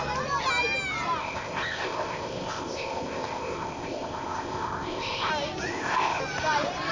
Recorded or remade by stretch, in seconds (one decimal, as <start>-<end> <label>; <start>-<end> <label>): 0.0-1.2 recorded; 1.2-5.3 remade; 5.3-5.7 recorded; 5.7-6.2 remade; 6.2-6.9 recorded